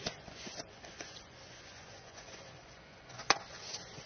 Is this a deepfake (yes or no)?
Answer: yes